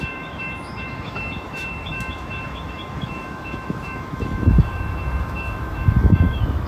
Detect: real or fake fake